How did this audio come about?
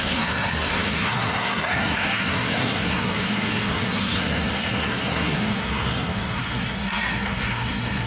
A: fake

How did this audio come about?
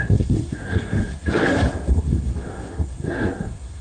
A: fake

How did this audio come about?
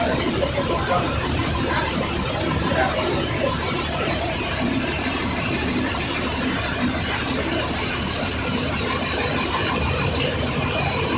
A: fake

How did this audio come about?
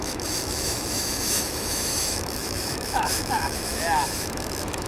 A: fake